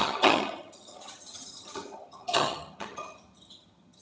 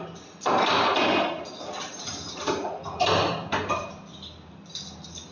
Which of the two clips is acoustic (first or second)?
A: second